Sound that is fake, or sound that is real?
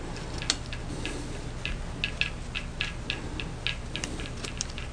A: real